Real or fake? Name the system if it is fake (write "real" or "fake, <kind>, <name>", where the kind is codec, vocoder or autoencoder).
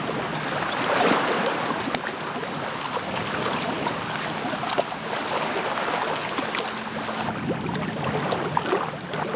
real